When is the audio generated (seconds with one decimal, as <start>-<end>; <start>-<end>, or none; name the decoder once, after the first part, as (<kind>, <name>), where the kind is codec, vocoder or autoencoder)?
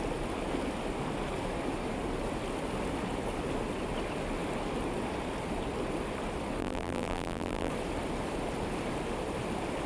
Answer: 6.6-7.7 (vocoder, BigVGAN v2)